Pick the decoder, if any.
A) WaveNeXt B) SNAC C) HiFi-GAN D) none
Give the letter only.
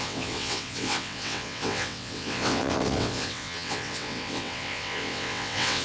A